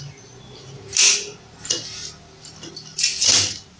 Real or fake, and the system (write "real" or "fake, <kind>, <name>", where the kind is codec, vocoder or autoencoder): real